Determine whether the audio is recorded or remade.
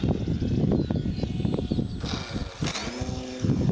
recorded